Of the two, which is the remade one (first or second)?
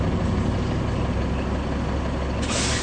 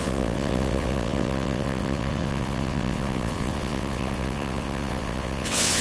second